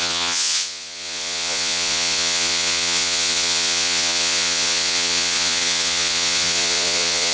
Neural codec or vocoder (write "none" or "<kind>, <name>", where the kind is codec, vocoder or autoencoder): vocoder, Vocos